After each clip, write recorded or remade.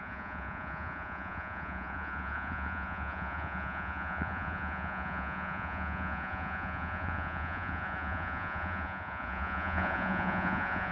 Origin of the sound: remade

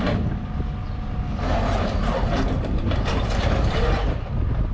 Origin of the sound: recorded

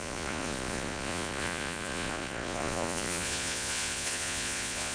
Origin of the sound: remade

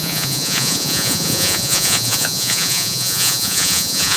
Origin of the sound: remade